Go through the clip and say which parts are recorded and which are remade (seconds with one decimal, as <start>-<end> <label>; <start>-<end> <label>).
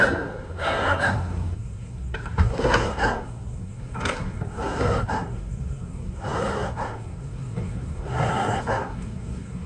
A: 0.0-9.7 remade